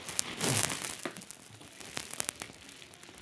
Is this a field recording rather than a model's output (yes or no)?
yes